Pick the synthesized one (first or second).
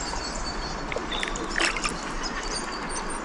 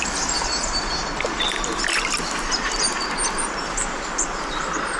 first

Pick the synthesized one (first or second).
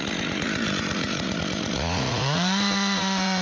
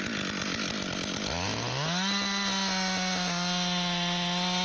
first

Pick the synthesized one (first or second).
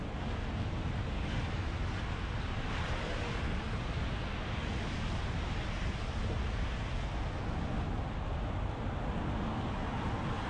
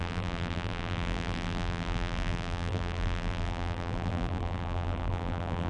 second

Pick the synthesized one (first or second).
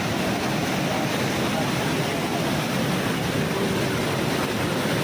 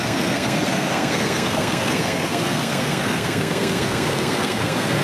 second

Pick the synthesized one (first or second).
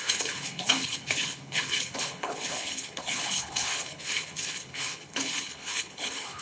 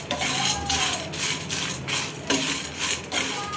first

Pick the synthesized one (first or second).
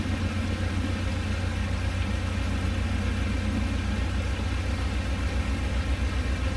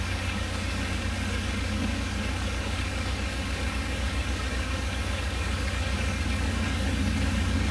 second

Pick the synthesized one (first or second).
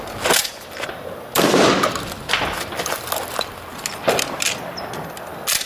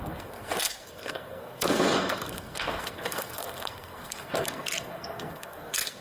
second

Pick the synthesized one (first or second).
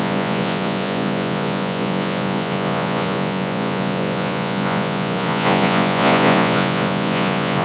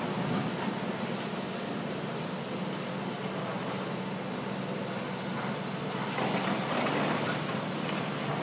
first